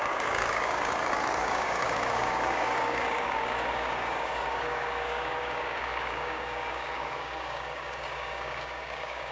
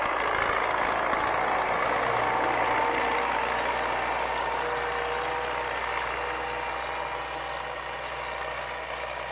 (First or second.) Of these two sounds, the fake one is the first